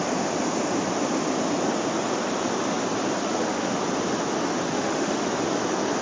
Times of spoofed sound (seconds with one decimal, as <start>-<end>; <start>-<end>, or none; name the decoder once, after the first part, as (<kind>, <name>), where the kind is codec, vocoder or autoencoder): 3.2-3.8 (autoencoder, DAC-VAE); 4.7-5.3